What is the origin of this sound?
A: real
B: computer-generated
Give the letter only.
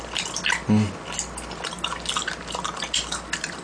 A